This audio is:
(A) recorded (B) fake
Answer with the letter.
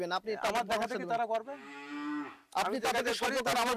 A